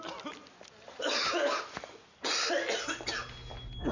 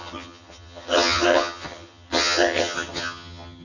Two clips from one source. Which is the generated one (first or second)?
second